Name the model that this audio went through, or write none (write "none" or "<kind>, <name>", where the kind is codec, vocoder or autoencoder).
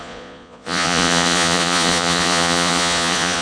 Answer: vocoder, Vocos